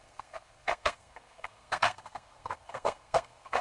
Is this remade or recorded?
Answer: remade